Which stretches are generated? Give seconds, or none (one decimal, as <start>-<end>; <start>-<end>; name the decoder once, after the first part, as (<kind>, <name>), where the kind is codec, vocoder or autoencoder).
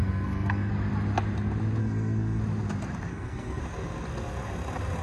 0.0-0.7 (codec, SNAC); 1.8-2.4; 3.1-3.6